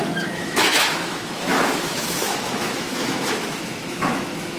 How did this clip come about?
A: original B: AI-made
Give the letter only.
B